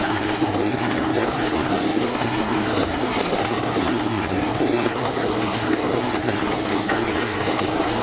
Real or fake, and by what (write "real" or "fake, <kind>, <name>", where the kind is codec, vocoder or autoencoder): fake, codec, SNAC